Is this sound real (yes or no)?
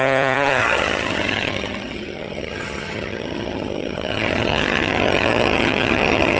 no